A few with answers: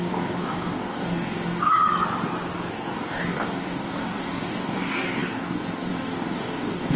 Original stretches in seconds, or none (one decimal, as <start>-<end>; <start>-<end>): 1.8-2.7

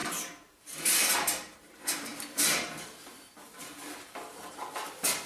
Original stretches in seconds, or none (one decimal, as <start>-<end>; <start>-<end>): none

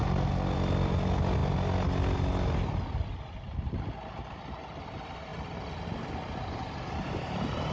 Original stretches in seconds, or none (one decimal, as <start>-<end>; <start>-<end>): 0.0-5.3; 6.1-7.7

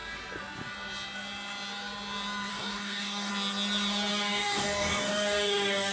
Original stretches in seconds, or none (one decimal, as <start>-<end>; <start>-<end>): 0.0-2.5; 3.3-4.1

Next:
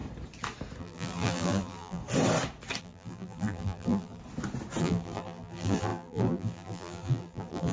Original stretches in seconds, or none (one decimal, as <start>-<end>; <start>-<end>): 0.0-0.8; 2.0-2.8; 4.2-4.8

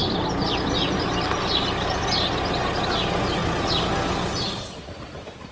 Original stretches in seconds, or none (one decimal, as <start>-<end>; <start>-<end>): 0.0-5.5

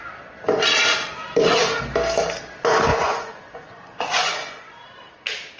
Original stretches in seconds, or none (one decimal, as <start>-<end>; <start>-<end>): 0.0-2.9; 4.7-5.6